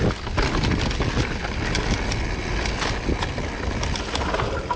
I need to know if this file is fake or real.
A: real